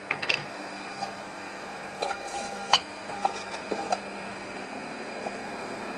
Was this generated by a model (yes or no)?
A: yes